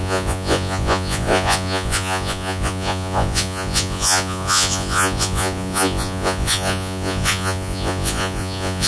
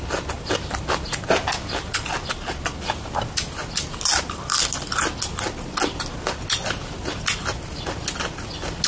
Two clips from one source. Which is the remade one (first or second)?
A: first